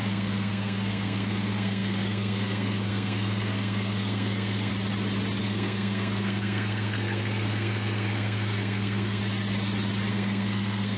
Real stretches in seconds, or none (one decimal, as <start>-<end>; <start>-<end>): 4.7-5.4; 9.2-10.1